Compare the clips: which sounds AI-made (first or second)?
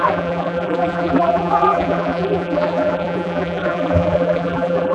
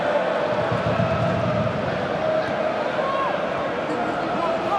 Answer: first